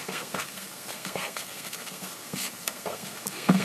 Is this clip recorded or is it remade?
remade